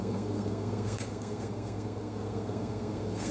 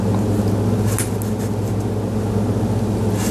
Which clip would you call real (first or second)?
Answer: second